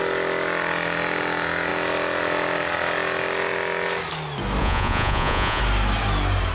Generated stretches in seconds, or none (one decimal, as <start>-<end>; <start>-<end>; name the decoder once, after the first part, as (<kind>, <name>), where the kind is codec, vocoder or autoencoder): 4.6-5.6 (vocoder, Vocos)

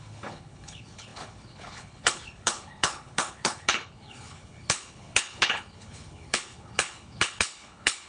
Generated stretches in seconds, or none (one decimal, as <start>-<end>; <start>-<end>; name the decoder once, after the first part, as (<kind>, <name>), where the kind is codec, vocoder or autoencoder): 0.0-8.1 (codec, HILCodec)